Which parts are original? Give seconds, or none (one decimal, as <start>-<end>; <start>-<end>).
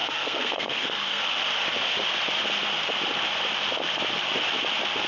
1.2-5.1